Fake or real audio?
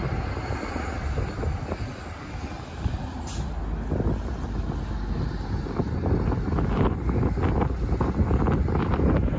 real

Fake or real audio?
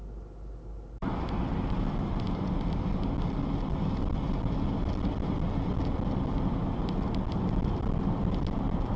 real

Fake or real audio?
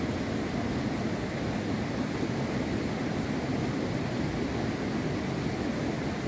real